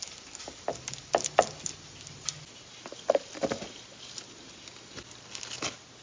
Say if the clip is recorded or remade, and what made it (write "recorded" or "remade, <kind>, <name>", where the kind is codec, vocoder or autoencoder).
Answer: recorded